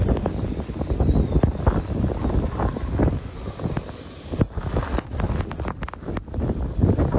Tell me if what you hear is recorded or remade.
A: recorded